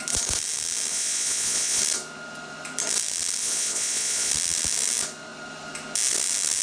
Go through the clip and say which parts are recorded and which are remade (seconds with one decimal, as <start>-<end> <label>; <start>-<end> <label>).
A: 0.0-0.9 recorded; 0.9-1.8 remade; 1.8-3.4 recorded; 3.4-4.3 remade; 4.3-6.6 recorded